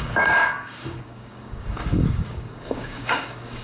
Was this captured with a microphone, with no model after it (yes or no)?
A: no